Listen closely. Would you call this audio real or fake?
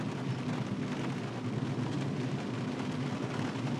real